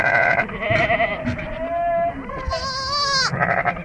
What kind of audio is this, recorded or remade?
recorded